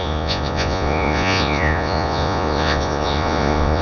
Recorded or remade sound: remade